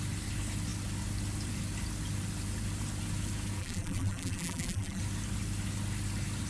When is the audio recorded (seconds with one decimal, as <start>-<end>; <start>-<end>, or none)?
0.0-3.6; 5.0-6.5